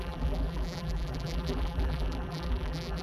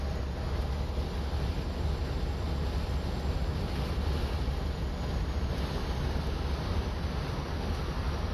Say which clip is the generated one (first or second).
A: first